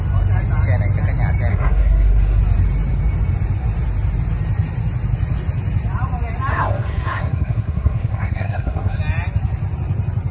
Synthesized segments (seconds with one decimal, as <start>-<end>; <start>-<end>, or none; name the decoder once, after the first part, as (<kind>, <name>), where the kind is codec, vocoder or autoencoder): 1.5-2.4 (codec, SNAC); 6.5-9.0